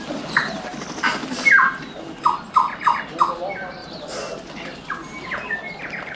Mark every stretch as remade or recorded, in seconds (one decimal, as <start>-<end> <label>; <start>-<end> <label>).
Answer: 0.0-6.2 recorded